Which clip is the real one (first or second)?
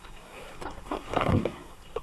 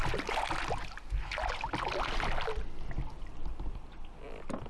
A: second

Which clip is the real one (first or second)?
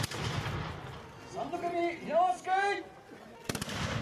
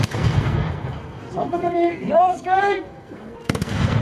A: first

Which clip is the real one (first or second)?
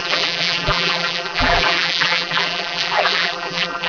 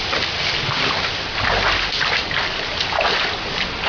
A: second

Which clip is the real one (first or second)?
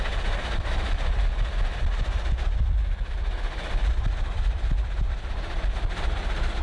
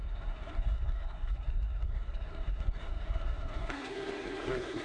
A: first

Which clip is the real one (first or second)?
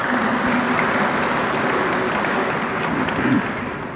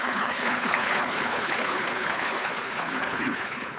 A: first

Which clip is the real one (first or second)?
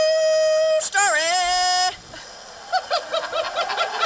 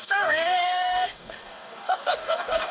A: first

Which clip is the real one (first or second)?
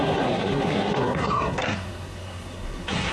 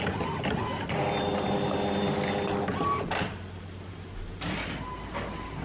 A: second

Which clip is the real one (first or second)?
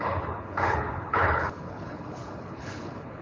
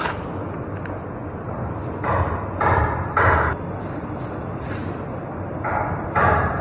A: second